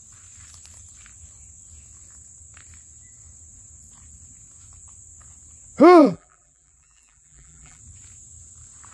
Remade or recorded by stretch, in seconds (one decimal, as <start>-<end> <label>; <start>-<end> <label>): 0.0-6.0 recorded; 6.0-7.8 remade; 7.8-8.9 recorded

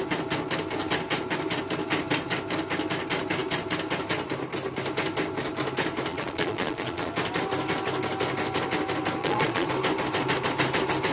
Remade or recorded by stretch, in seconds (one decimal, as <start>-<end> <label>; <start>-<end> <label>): 0.0-6.1 recorded; 6.1-7.1 remade; 7.1-9.2 recorded; 9.2-9.7 remade; 9.7-11.1 recorded